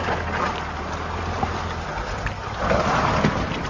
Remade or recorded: recorded